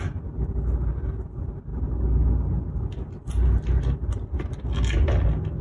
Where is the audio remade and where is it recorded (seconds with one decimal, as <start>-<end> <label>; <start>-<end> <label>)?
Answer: 0.0-5.6 recorded